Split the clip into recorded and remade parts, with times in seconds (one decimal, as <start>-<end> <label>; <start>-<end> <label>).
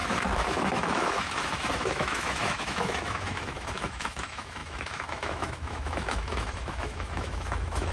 0.0-7.9 remade